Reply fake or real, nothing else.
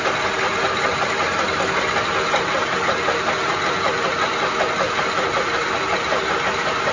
real